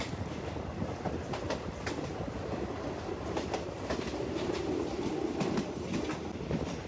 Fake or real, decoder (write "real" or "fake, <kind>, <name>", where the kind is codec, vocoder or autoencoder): real